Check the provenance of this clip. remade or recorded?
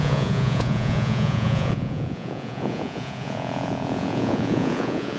remade